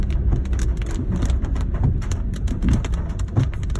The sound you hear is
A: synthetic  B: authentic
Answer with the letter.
B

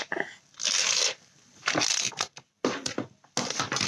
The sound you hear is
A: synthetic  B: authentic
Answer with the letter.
B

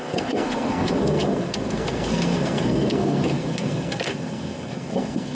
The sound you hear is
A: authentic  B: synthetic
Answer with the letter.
B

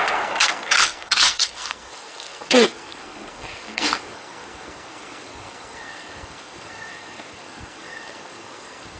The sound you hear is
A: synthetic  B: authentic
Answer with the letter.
A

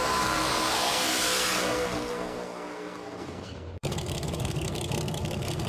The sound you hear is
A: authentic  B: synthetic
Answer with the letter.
B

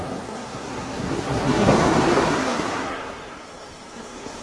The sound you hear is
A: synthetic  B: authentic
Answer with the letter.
A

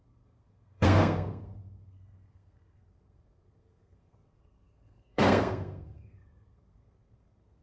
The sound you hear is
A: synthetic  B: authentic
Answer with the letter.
A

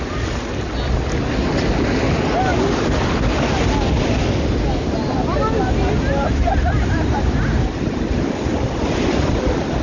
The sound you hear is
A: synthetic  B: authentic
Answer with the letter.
B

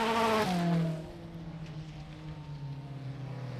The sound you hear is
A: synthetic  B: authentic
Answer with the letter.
B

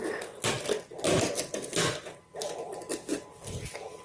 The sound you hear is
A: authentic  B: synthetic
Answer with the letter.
A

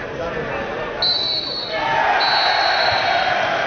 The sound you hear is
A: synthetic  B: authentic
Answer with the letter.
B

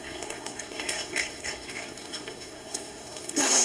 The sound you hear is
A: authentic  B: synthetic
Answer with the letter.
B